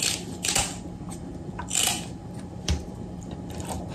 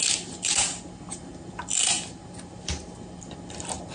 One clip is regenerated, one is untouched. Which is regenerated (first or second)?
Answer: first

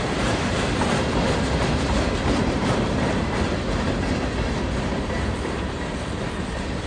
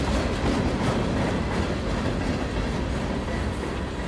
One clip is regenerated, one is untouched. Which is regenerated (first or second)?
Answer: first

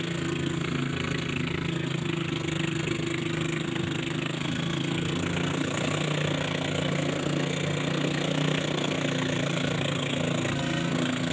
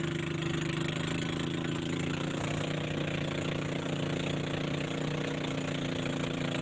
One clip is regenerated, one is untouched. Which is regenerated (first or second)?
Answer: first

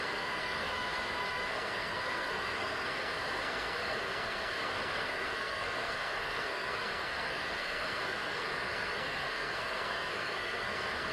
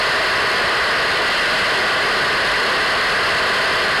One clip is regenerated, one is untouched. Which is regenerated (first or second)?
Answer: first